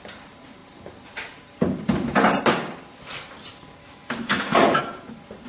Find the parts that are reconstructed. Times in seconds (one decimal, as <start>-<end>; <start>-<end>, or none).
3.8-4.8